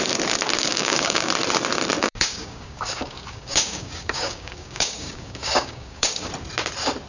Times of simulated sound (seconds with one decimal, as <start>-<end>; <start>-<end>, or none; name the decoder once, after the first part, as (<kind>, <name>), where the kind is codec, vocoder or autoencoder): 0.7-1.3 (codec, DAC); 2.0-6.3